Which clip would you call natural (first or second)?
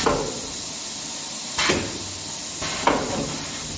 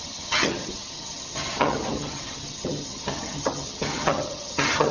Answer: first